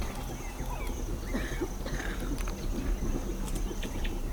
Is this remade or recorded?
recorded